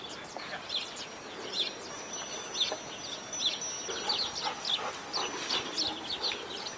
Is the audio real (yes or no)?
yes